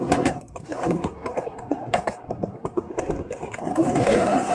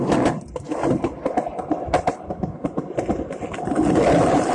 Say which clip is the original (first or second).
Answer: second